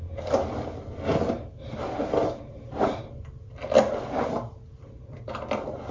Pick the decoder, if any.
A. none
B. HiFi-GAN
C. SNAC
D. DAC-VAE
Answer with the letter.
A